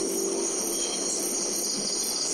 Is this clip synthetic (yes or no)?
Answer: no